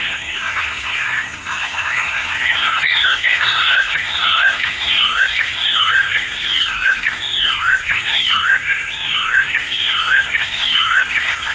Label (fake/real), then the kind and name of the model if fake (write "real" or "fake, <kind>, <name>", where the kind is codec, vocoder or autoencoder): fake, codec, SNAC